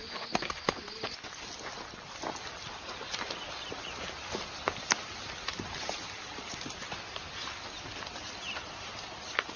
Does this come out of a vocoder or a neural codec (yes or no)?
no